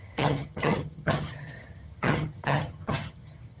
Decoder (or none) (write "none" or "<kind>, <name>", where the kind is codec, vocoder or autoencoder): vocoder, HiFi-GAN